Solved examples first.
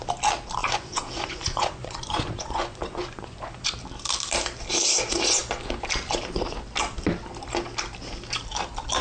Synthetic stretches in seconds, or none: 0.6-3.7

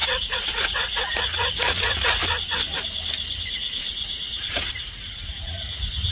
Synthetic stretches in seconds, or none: 0.0-2.2; 3.4-6.1

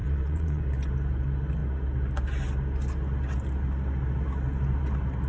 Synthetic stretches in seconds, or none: 0.0-0.6

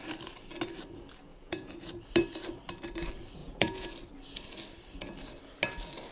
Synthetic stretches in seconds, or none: 1.3-1.9; 3.4-3.9

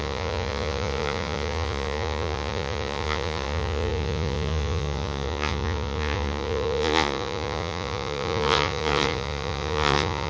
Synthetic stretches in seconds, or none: 0.0-10.3